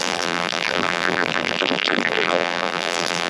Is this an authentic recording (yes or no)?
no